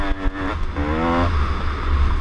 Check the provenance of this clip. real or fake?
real